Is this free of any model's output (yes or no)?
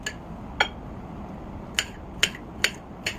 yes